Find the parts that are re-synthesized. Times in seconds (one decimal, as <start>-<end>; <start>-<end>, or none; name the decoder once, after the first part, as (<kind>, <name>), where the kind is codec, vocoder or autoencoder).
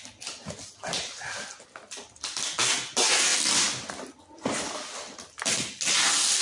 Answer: none